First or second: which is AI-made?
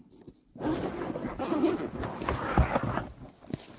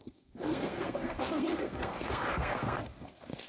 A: second